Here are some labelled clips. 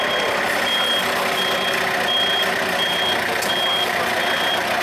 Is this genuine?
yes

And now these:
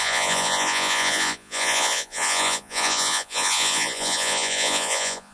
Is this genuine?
no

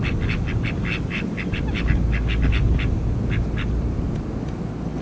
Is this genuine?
yes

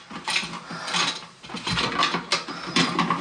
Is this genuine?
yes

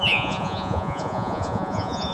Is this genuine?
no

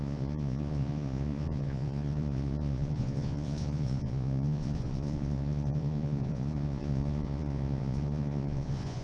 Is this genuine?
no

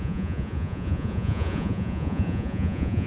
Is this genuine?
no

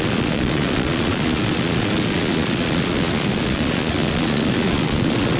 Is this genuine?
no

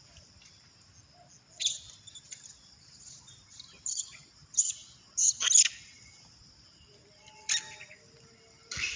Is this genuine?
yes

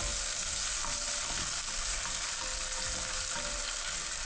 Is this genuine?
yes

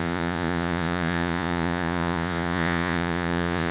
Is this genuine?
no